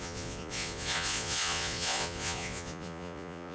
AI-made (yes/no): yes